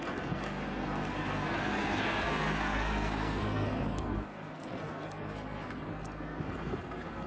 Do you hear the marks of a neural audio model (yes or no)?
yes